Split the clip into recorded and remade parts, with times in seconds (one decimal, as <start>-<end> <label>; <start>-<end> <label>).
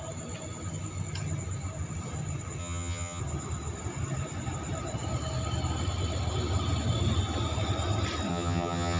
0.0-2.6 recorded; 2.6-3.2 remade; 3.2-8.3 recorded; 8.3-9.0 remade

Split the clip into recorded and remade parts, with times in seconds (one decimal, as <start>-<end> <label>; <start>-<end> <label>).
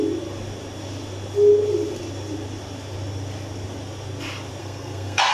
0.0-4.6 recorded; 4.6-5.3 remade